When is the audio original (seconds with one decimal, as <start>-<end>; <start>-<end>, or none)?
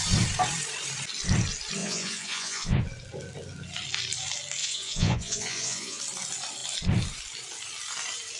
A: 0.0-1.8; 2.8-4.6; 6.0-8.4